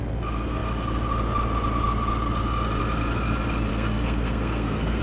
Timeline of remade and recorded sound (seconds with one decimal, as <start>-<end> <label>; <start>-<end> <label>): 0.0-3.7 recorded; 3.7-5.0 remade